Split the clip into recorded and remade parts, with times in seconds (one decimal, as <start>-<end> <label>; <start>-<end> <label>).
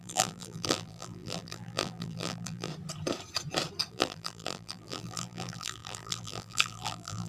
0.0-2.7 remade; 2.7-3.9 recorded; 3.9-7.3 remade